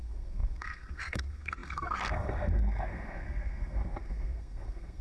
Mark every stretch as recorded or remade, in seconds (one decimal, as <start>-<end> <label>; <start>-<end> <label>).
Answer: 0.0-5.0 remade